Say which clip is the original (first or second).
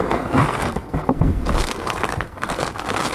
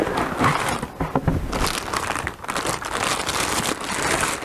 second